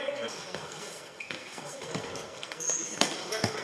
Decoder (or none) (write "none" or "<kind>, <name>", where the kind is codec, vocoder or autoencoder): codec, SNAC